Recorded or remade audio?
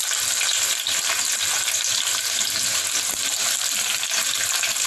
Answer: recorded